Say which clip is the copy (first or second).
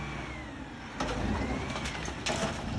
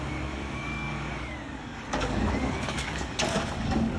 second